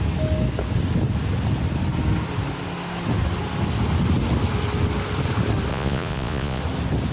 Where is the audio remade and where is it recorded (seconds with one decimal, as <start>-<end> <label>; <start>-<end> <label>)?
0.0-5.7 recorded; 5.7-6.6 remade; 6.6-7.1 recorded